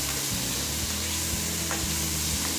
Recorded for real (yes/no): no